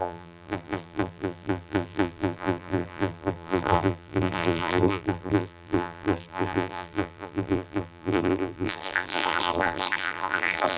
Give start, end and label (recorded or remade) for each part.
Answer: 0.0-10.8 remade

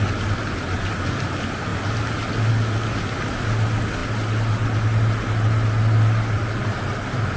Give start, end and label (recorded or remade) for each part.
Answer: 0.0-7.4 recorded